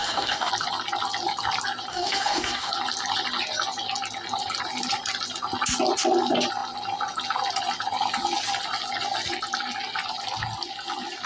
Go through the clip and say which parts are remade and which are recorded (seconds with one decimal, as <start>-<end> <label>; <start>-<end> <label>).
0.0-0.5 remade; 0.5-1.9 recorded; 1.9-2.7 remade; 2.7-11.3 recorded